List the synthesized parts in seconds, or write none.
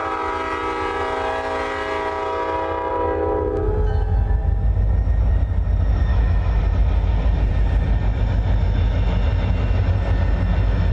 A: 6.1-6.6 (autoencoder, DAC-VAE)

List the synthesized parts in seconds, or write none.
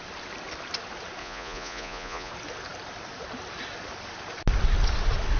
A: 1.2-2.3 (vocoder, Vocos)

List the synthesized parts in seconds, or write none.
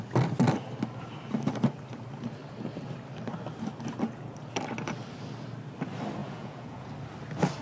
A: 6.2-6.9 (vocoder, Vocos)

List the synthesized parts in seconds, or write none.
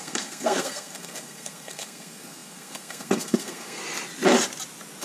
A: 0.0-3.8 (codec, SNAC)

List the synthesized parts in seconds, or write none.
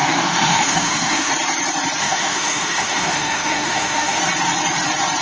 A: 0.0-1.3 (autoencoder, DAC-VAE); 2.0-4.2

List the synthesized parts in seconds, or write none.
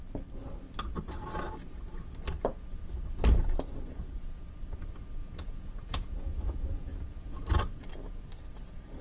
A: 5.2-7.5 (vocoder, Vocos)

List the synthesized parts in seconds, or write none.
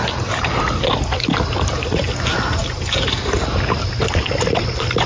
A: none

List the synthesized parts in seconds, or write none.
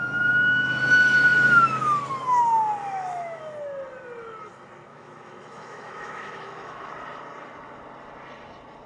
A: 2.8-3.4 (autoencoder, DAC-VAE); 4.9-6.9